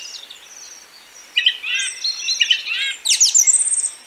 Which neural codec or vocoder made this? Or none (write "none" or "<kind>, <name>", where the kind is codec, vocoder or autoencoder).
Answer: none